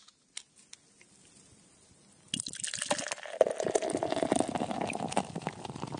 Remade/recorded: recorded